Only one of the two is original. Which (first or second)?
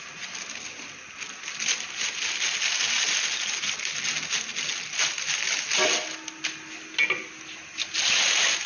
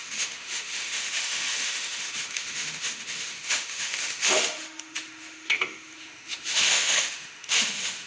first